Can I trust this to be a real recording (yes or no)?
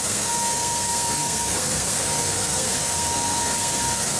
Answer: no